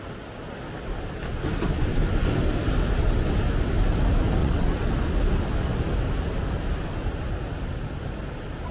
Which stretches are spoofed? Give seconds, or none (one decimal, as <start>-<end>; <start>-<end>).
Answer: 4.4-4.9